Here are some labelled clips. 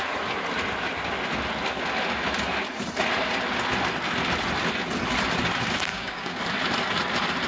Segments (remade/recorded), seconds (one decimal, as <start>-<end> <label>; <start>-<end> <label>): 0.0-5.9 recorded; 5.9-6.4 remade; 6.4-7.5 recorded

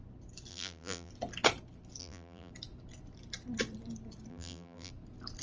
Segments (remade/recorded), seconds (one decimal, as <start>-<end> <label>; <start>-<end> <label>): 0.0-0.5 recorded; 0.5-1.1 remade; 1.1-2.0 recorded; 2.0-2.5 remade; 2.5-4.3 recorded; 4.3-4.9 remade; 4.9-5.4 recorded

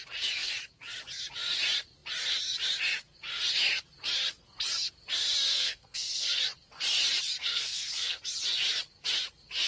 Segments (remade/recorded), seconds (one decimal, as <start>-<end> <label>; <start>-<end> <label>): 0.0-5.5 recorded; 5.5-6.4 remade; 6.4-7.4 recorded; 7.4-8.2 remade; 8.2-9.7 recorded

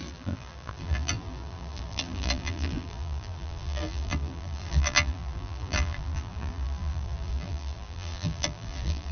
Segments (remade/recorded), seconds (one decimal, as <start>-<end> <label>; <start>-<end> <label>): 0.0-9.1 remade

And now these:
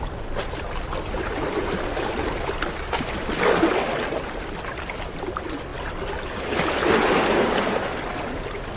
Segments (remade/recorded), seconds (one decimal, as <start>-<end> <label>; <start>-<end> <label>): 0.0-8.8 recorded

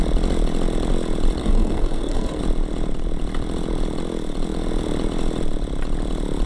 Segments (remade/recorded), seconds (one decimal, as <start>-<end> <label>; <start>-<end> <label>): 0.0-1.4 recorded; 1.4-2.4 remade; 2.4-6.5 recorded

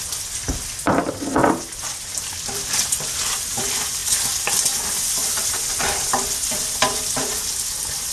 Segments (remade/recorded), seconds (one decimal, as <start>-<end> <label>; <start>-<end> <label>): 0.0-8.1 remade